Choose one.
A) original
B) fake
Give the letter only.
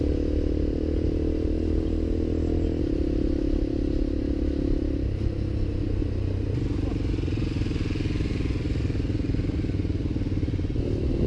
A